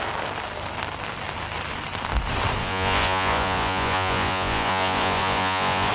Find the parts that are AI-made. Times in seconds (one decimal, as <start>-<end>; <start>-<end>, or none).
2.6-5.9